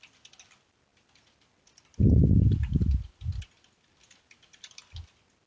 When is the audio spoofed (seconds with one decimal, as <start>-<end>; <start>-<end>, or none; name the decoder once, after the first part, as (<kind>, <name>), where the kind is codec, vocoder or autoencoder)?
none